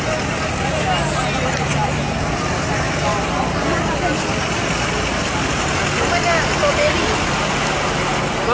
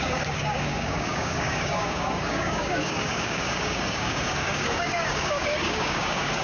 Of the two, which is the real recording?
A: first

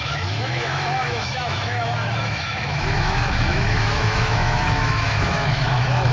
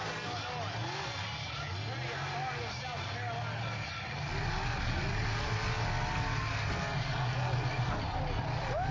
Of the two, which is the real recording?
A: second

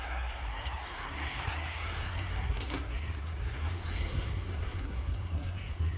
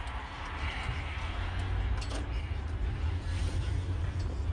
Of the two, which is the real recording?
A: second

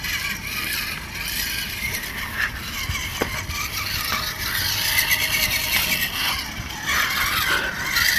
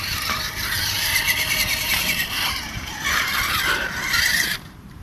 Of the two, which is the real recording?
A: first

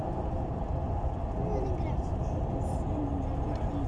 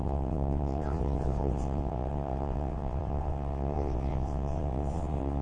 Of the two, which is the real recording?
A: first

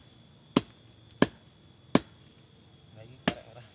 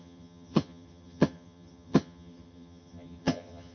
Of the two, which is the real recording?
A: first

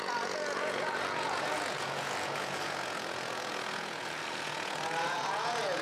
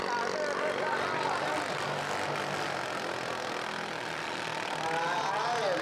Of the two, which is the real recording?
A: second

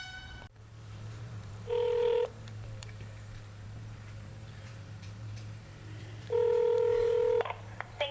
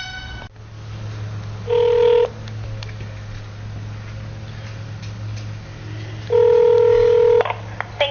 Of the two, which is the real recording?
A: second